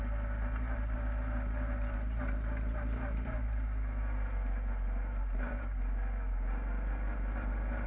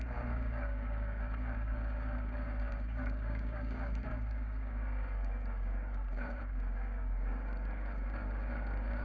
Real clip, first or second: first